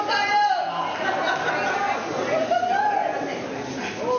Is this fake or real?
real